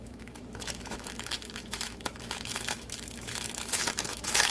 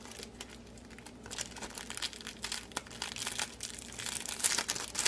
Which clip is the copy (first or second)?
first